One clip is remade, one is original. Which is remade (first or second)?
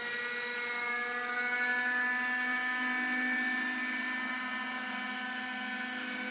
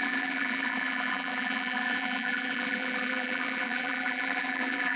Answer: second